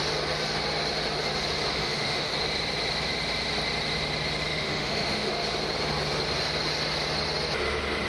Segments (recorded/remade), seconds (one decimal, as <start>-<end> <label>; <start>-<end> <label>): 0.0-1.7 recorded; 1.7-2.3 remade; 2.3-4.5 recorded; 4.5-5.3 remade; 5.3-8.1 recorded